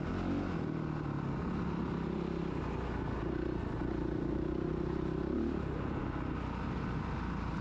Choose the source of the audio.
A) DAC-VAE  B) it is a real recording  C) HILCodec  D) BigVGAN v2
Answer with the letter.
B